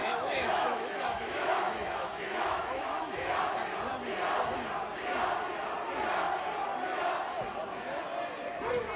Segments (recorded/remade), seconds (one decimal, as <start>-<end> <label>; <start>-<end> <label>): 0.0-3.4 remade; 3.4-9.0 recorded